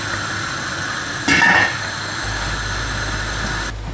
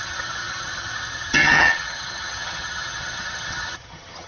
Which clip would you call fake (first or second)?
second